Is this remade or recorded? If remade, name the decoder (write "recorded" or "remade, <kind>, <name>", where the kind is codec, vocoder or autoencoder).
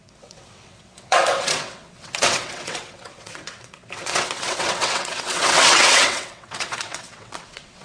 remade, vocoder, WaveNeXt